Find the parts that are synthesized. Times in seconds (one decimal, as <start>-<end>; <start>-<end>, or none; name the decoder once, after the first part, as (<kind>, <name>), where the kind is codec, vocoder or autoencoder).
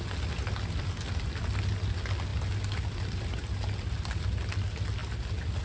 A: none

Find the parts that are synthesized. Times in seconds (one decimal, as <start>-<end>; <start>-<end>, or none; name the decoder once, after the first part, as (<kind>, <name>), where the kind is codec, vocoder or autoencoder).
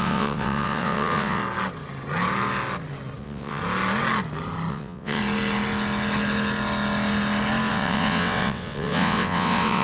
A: 0.0-1.4 (vocoder, WaveNeXt); 3.2-3.6; 4.7-5.2; 7.7-9.8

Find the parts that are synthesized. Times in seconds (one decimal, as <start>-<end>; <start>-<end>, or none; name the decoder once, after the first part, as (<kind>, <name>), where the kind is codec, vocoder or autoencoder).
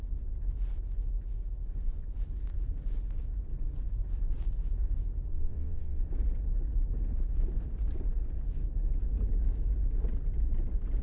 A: 5.3-6.0 (vocoder, WaveNeXt)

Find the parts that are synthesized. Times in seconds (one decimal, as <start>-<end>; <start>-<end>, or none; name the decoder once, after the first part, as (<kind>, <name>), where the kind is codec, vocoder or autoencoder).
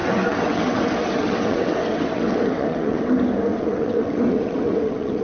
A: 0.0-3.1 (vocoder, WaveNeXt); 3.5-5.2